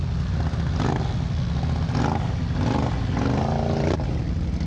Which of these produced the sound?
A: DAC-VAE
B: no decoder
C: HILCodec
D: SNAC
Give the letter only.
B